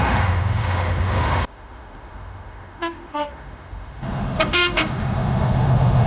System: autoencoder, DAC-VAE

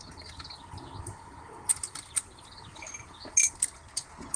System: none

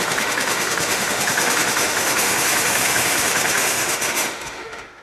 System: autoencoder, DAC-VAE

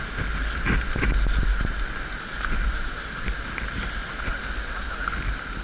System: none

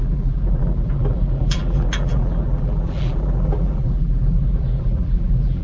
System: vocoder, BigVGAN v2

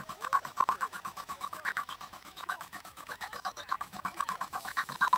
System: autoencoder, DAC-VAE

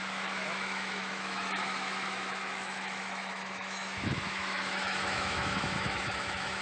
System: autoencoder, DAC-VAE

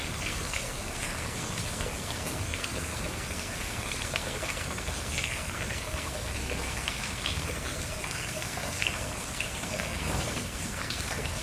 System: codec, SNAC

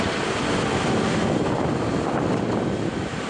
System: none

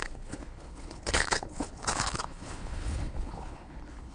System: codec, HILCodec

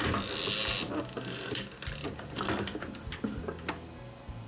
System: none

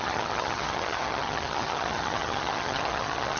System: vocoder, HiFi-GAN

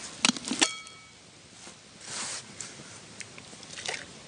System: none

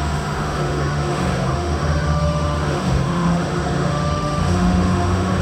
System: autoencoder, DAC-VAE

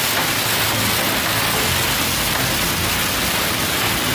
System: none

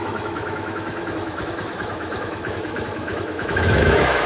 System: autoencoder, DAC-VAE